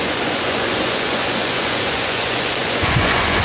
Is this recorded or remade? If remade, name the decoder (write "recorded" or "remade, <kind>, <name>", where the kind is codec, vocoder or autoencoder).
remade, vocoder, Vocos